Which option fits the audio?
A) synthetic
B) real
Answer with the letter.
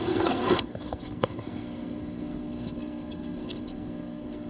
A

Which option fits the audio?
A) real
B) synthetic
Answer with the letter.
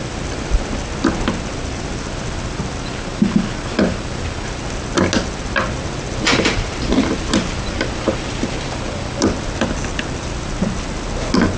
A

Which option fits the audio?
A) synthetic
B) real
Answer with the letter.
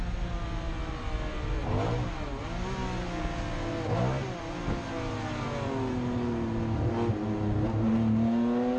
B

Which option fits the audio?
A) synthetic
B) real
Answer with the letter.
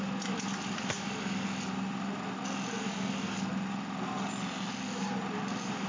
B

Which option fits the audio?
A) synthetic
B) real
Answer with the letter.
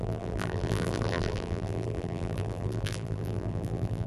A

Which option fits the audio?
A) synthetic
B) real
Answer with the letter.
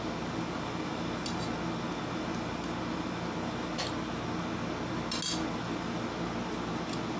B